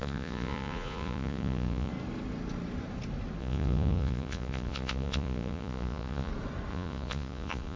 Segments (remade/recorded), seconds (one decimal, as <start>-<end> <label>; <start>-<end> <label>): 0.0-1.9 remade; 1.9-3.4 recorded; 3.4-6.3 remade; 6.3-6.7 recorded; 6.7-7.8 remade